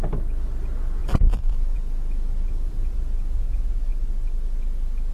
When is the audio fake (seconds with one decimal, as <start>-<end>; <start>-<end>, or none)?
1.0-3.2; 3.9-4.6